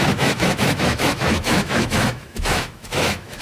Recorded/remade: remade